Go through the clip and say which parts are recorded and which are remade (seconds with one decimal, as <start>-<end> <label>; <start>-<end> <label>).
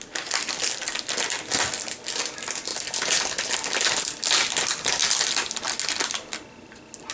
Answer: 0.0-7.1 recorded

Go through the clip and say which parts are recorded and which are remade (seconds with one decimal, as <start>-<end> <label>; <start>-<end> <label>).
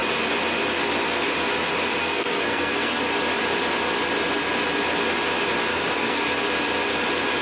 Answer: 0.0-2.0 recorded; 2.0-3.0 remade; 3.0-5.7 recorded; 5.7-6.2 remade; 6.2-7.4 recorded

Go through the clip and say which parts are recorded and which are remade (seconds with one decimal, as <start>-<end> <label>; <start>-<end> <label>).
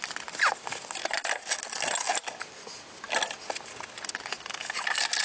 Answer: 0.0-5.2 recorded